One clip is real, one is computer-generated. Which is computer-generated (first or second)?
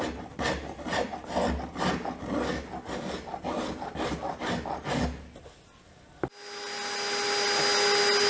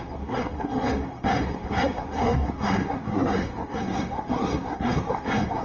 second